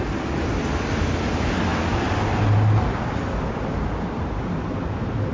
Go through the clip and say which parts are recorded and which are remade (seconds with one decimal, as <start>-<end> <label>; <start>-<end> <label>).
0.0-5.3 recorded